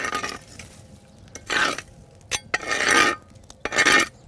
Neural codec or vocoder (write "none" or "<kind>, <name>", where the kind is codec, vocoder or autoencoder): none